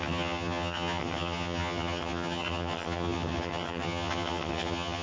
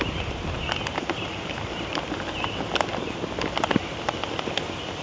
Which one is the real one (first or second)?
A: second